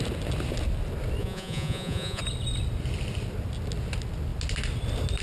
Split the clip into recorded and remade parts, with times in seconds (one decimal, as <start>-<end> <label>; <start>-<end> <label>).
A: 0.0-1.2 recorded; 1.2-2.2 remade; 2.2-5.2 recorded